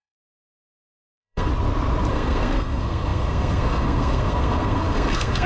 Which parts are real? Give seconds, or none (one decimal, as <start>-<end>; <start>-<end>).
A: 1.5-2.1